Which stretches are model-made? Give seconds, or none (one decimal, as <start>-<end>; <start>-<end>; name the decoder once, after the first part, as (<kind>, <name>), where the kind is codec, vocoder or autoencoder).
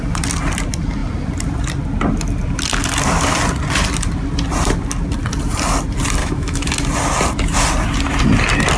6.2-6.7 (autoencoder, DAC-VAE)